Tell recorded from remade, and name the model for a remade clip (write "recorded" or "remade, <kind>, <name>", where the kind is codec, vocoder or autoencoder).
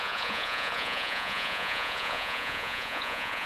remade, vocoder, Vocos